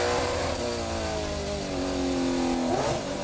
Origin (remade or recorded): recorded